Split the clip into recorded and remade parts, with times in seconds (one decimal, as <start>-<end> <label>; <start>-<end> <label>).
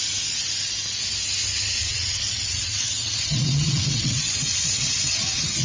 0.0-1.9 recorded; 1.9-5.6 remade